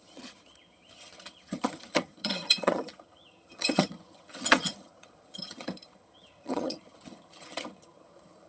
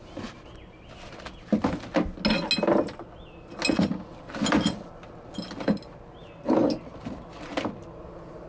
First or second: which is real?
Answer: second